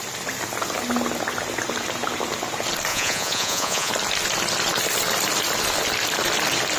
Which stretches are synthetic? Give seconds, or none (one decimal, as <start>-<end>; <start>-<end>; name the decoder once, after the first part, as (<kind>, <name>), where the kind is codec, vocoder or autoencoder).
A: 2.9-3.9 (vocoder, Vocos)